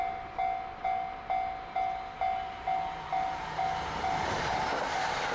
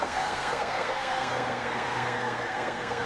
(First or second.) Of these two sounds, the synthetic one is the second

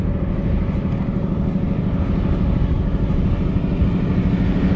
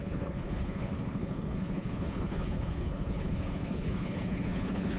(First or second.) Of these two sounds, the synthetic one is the second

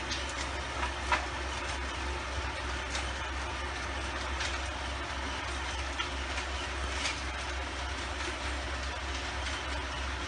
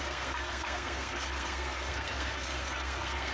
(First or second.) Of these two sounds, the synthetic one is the second